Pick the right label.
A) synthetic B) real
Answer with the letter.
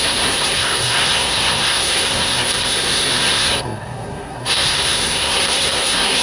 A